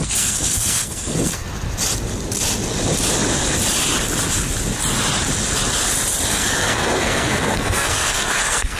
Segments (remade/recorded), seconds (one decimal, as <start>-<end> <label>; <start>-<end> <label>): 0.0-1.5 remade; 1.5-6.3 recorded; 6.3-8.8 remade